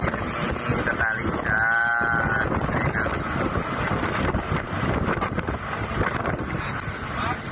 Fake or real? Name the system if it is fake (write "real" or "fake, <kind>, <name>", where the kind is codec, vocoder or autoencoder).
real